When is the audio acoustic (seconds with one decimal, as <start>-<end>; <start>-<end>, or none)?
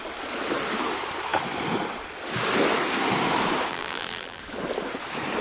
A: 0.0-3.7; 4.4-5.4